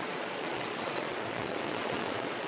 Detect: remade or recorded remade